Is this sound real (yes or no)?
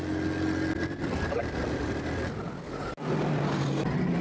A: yes